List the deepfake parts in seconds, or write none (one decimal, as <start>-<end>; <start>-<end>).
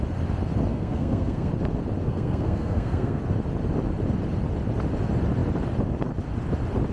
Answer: 0.7-1.5; 2.0-3.2